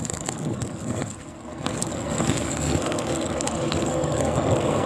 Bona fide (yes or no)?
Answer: no